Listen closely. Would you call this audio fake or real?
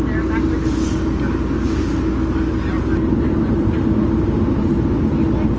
real